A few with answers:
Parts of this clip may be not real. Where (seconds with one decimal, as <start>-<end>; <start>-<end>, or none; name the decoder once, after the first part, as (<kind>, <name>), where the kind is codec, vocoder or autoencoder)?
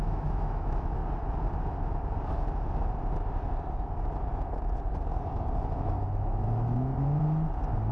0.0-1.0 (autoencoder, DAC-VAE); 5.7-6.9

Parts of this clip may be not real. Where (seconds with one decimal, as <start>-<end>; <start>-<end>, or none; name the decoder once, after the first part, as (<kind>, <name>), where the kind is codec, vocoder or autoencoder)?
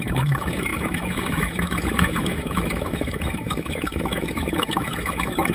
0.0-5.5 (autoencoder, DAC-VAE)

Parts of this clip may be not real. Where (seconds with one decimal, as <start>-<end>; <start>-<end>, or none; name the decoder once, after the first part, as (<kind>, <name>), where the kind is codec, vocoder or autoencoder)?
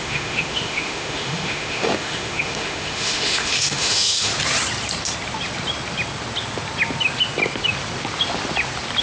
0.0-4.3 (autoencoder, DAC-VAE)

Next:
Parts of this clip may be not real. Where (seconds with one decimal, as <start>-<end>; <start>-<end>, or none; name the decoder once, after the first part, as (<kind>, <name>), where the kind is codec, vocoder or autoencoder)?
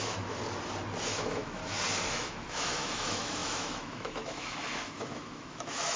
0.0-0.4 (autoencoder, DAC-VAE); 1.1-1.6; 2.1-6.0